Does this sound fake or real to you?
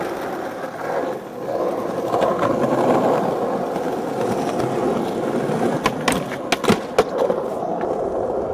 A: real